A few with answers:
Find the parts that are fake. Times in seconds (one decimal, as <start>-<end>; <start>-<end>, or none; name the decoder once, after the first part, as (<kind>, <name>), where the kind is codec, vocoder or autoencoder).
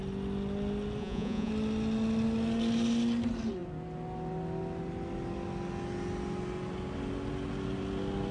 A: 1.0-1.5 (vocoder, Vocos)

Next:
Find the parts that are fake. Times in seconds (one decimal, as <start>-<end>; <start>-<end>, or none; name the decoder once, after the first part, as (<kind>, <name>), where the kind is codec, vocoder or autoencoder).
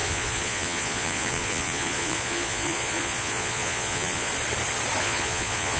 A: 0.0-4.3 (vocoder, Vocos); 5.0-5.8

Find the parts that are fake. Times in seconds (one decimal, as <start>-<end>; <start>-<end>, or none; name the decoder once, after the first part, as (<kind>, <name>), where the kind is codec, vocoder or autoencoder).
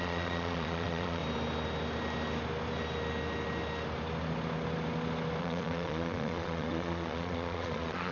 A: 0.0-1.2 (vocoder, Vocos); 5.4-8.1